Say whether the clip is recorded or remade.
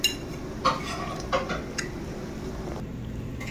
recorded